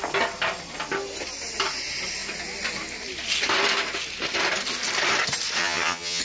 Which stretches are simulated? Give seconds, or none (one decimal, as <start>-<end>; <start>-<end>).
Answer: 5.6-6.2